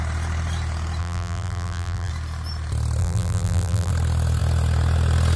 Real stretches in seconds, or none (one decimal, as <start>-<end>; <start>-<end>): 0.0-1.0; 2.1-3.0; 3.9-5.4